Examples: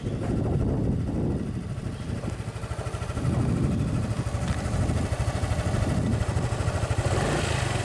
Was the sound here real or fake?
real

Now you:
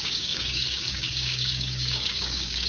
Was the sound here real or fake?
fake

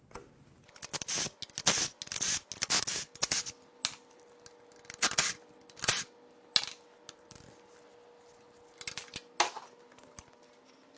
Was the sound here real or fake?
real